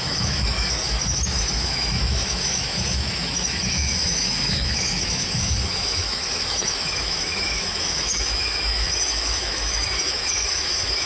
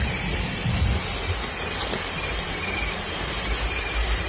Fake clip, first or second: first